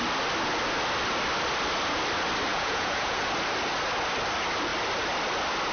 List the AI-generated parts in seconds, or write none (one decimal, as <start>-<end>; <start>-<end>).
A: 2.5-3.2